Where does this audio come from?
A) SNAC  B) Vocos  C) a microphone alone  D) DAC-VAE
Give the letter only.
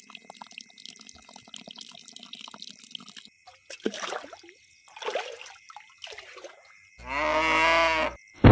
C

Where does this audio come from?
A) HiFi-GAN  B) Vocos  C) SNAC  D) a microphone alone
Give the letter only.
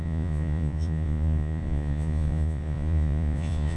B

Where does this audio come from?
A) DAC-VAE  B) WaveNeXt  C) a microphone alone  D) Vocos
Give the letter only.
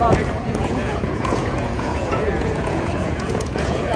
D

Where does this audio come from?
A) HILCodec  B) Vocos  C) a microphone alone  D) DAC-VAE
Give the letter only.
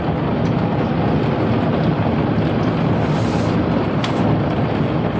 C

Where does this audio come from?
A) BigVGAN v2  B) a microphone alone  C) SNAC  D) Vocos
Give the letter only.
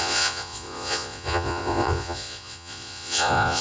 D